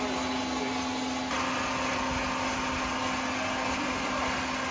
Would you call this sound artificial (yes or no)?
no